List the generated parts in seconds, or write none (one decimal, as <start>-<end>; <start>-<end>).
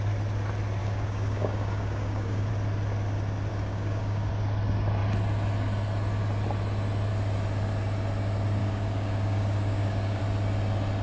0.8-2.5; 3.5-4.3; 8.6-10.2